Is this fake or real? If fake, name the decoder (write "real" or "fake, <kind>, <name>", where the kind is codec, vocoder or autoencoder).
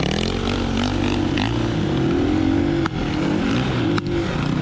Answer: real